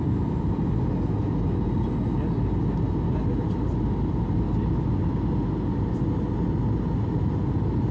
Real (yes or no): yes